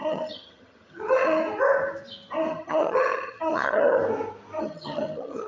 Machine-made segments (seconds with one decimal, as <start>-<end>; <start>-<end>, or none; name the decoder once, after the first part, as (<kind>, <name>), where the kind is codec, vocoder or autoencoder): 0.0-1.4 (vocoder, HiFi-GAN); 2.5-4.0; 4.6-5.5